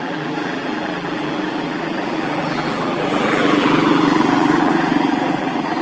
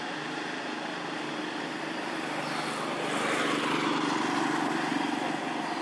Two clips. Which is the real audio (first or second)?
second